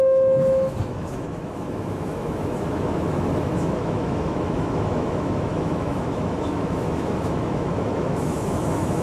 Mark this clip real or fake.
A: fake